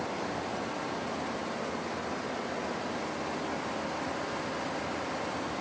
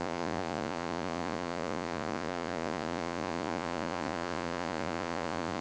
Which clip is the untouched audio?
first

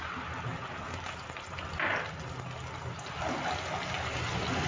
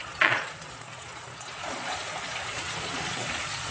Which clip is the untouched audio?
first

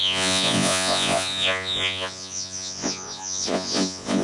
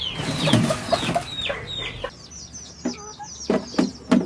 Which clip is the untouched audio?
second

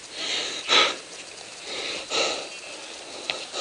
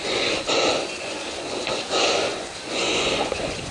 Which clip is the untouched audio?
first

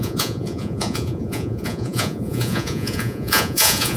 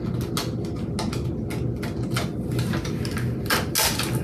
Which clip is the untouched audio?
second